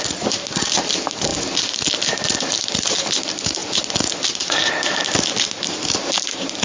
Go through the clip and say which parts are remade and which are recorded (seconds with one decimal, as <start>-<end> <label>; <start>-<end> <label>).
0.0-6.6 recorded